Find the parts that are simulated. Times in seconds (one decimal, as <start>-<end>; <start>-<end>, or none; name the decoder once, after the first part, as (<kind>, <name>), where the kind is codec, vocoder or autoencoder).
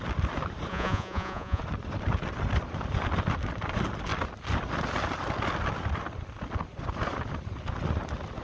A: 0.7-1.6 (vocoder, Vocos)